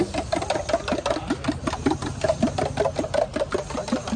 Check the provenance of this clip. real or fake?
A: real